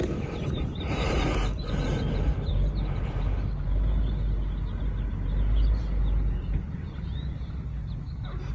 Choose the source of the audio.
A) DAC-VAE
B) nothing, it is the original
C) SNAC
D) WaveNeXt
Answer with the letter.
B